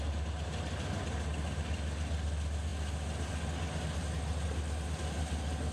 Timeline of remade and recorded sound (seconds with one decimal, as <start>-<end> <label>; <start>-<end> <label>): 0.0-5.7 recorded